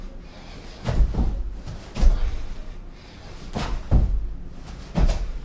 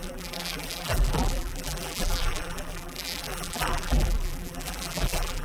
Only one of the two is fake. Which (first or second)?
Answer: second